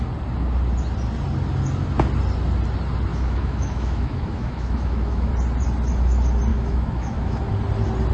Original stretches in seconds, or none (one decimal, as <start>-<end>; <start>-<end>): 0.0-3.1; 5.3-6.5; 7.4-8.1